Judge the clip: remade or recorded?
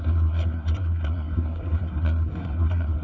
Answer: remade